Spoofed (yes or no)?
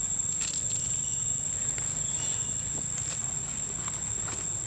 no